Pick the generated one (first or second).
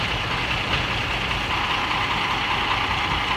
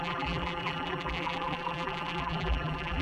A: second